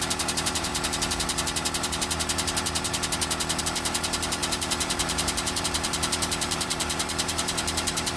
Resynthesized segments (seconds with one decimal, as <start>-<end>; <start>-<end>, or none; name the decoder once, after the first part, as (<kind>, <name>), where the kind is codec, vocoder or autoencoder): 0.0-0.7 (vocoder, BigVGAN v2); 3.6-8.2